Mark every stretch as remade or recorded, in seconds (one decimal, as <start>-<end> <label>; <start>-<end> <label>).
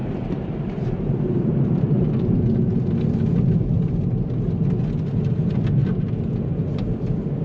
0.0-2.4 remade; 2.4-7.4 recorded